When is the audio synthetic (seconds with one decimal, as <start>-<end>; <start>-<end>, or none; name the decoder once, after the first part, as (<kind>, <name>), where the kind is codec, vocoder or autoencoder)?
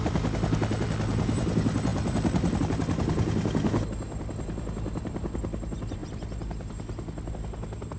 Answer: none